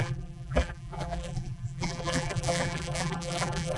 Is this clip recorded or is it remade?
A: remade